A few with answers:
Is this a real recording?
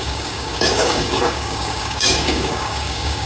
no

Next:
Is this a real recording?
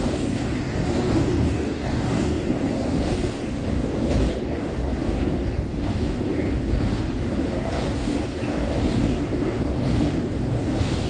no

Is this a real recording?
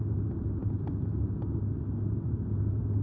yes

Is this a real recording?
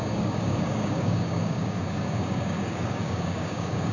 no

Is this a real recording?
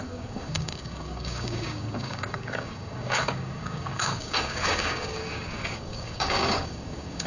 no